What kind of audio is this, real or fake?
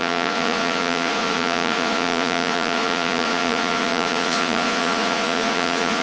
fake